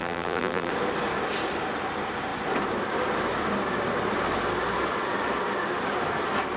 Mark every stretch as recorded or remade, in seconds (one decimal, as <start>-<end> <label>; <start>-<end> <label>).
0.0-0.7 remade; 0.7-6.6 recorded